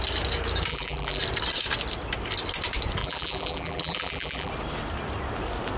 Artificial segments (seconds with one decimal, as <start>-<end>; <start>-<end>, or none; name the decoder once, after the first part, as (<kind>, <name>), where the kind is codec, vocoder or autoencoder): 0.7-1.2 (vocoder, BigVGAN v2); 3.0-4.5